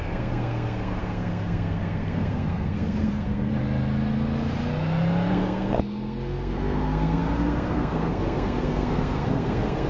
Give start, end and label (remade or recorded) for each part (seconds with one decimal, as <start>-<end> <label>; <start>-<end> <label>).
0.0-3.5 remade; 3.5-5.3 recorded; 5.3-9.9 remade